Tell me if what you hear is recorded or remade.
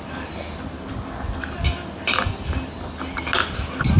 recorded